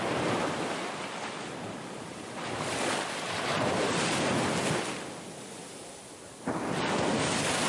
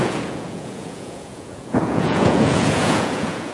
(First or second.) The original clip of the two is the first